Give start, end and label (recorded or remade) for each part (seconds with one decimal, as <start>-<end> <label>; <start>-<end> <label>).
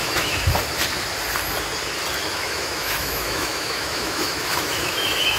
0.0-0.5 remade; 0.5-2.2 recorded; 2.2-5.4 remade